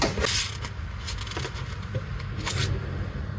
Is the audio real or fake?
real